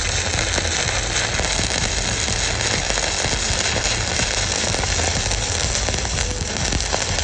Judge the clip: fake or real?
real